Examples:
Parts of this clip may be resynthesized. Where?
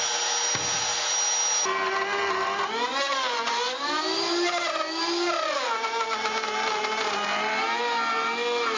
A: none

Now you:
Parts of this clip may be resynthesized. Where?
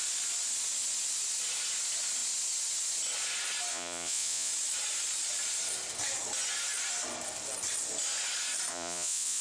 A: 3.7-4.5 (vocoder, Vocos); 8.7-9.4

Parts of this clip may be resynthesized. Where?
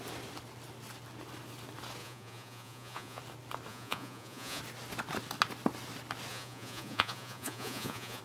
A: 2.0-3.2 (vocoder, Vocos); 3.7-4.6; 6.3-8.2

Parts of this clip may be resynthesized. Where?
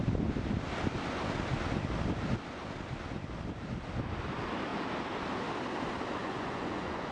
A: 6.2-7.1 (vocoder, Vocos)